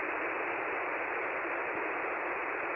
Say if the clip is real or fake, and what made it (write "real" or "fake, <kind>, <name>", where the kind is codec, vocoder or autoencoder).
real